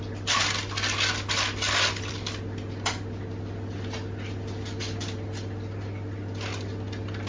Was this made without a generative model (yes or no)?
yes